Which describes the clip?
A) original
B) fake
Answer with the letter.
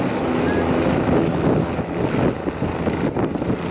A